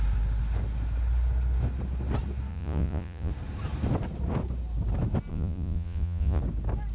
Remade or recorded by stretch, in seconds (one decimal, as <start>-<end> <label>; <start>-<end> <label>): 0.0-2.5 recorded; 2.5-3.3 remade; 3.3-5.3 recorded; 5.3-6.4 remade; 6.4-6.9 recorded